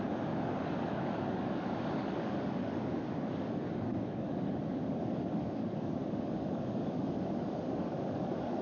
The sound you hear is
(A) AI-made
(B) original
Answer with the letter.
A